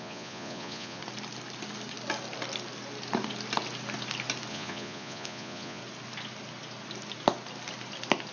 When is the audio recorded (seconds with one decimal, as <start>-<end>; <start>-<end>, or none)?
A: 1.0-4.5; 5.8-8.3